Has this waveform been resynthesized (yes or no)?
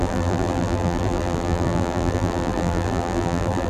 yes